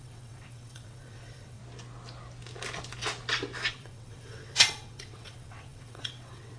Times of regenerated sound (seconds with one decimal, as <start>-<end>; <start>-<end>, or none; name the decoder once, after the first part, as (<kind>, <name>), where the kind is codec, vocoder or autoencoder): 0.0-1.6 (vocoder, WaveNeXt); 3.7-6.6